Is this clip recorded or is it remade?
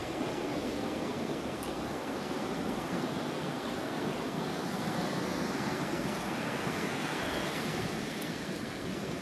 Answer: remade